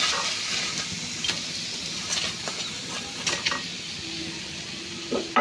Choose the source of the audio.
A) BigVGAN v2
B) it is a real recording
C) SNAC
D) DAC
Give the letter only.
B